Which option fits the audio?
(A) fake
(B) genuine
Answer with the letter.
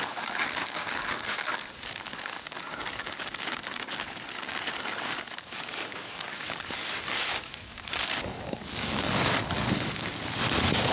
A